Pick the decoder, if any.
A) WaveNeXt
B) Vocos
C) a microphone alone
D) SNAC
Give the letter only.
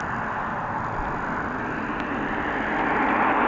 C